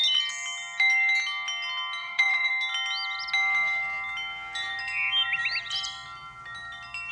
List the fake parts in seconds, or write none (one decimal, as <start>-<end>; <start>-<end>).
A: 2.0-2.5